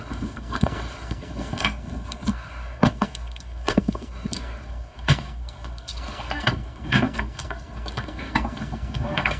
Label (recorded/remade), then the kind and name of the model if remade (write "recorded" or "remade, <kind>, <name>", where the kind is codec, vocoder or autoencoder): remade, codec, SNAC